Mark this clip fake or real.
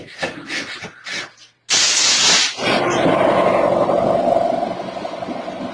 real